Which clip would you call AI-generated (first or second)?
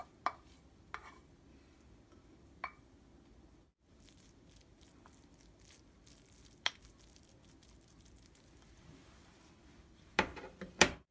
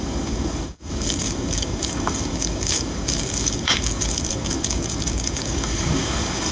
second